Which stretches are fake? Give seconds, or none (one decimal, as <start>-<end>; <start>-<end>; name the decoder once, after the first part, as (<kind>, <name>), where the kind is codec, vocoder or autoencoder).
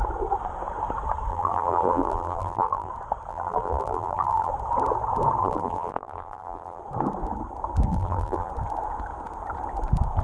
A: 1.3-2.9 (vocoder, BigVGAN v2); 3.3-4.5; 5.4-6.8; 7.9-8.5